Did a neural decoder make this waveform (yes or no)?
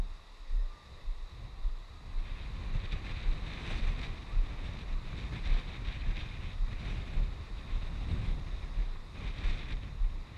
no